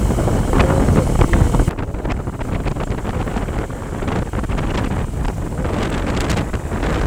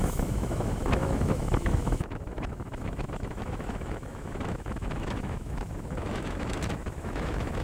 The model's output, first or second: second